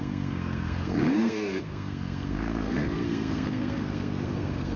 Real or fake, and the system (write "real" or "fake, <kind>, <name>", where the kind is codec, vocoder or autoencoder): fake, codec, SNAC